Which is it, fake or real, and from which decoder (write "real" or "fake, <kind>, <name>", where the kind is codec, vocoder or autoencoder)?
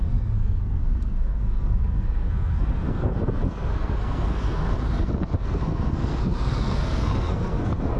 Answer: fake, codec, SNAC